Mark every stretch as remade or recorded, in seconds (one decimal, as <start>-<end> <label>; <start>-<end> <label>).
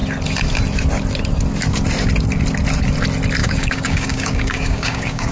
0.0-3.4 recorded; 3.4-5.3 remade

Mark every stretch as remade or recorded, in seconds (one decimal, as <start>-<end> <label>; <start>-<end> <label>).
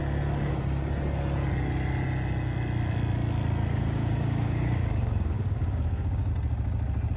0.0-3.7 recorded; 3.7-6.3 remade; 6.3-7.2 recorded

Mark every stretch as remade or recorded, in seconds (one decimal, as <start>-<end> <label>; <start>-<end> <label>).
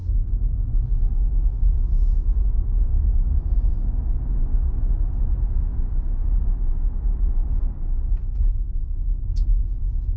0.0-2.9 recorded; 2.9-4.2 remade; 4.2-10.2 recorded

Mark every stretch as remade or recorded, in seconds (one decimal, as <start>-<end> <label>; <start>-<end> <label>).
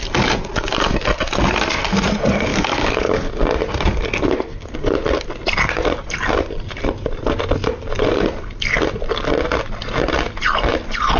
0.0-2.5 recorded; 2.5-3.3 remade; 3.3-11.2 recorded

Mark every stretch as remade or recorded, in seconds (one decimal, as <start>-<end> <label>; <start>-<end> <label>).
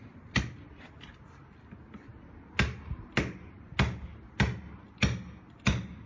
0.0-6.1 recorded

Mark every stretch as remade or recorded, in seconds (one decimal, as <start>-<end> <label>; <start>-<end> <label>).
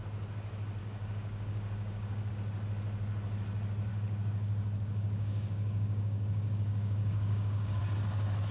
0.0-0.8 recorded; 0.8-2.3 remade; 2.3-3.9 recorded; 3.9-7.8 remade; 7.8-8.5 recorded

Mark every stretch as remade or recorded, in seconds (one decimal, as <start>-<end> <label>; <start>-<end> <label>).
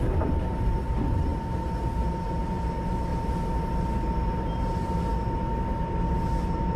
0.0-6.8 recorded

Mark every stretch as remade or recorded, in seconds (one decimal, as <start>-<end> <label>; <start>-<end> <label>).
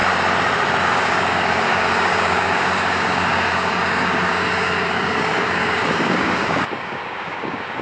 0.0-0.8 recorded; 0.8-7.8 remade